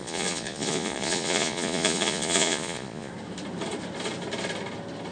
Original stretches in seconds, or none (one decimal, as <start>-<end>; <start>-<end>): 3.1-5.1